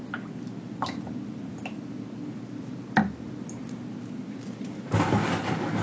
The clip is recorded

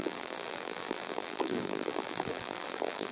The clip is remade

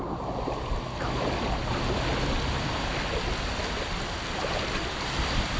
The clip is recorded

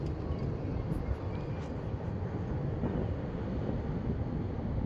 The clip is recorded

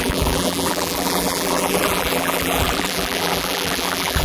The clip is remade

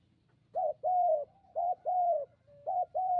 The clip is remade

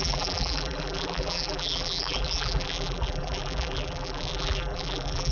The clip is remade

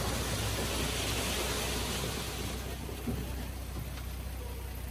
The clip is recorded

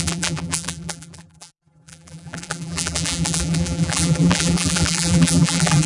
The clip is remade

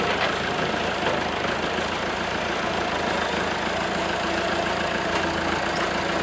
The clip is recorded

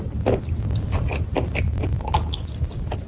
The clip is recorded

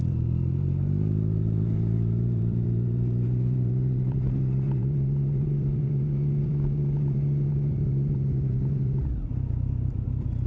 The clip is remade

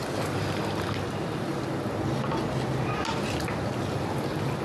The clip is recorded